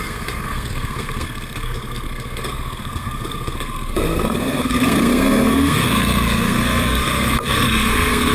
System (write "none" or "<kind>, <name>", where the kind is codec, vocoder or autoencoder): codec, SNAC